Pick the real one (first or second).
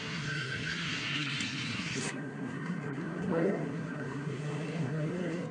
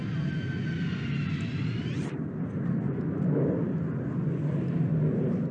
second